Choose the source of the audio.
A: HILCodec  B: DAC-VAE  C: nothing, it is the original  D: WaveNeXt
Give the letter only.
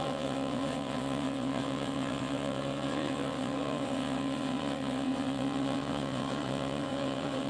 D